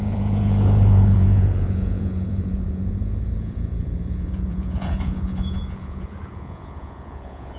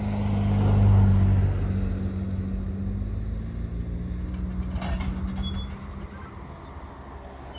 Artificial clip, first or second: first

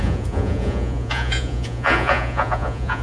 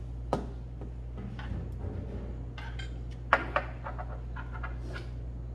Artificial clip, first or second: first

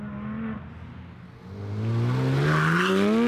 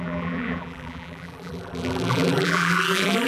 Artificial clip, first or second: second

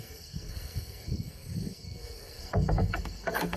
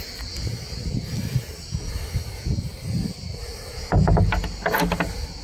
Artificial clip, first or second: first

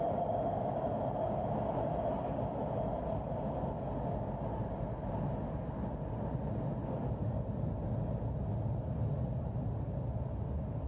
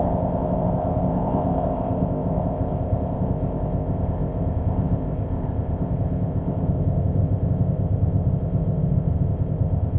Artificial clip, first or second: second